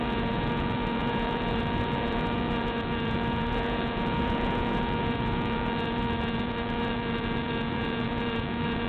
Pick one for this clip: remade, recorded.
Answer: remade